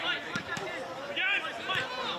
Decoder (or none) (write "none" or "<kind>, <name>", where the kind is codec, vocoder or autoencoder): none